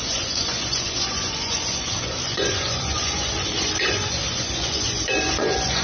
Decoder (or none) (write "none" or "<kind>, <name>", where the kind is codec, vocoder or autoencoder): vocoder, Vocos